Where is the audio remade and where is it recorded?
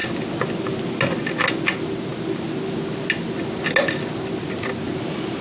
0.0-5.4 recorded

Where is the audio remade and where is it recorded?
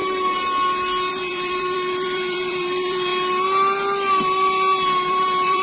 0.0-1.1 recorded; 1.1-3.1 remade; 3.1-5.1 recorded; 5.1-5.6 remade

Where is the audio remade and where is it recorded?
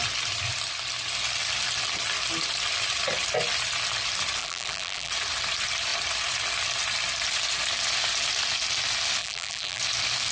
0.0-4.4 recorded; 4.4-5.1 remade; 5.1-9.2 recorded; 9.2-9.8 remade; 9.8-10.3 recorded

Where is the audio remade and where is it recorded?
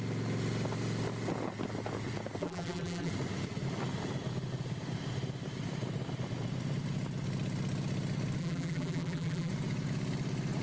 0.0-2.4 recorded; 2.4-3.1 remade; 3.1-8.4 recorded; 8.4-9.5 remade; 9.5-10.6 recorded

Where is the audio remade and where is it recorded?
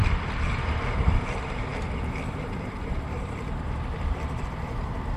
0.0-5.2 remade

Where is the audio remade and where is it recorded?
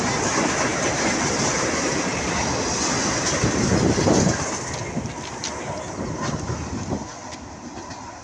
0.0-0.7 recorded; 0.7-2.4 remade; 2.4-8.2 recorded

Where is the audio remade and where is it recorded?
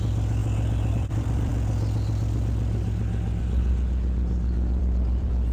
0.0-1.5 remade; 1.5-4.8 recorded; 4.8-5.5 remade